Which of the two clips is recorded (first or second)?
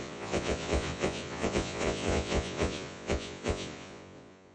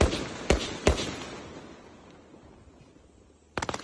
second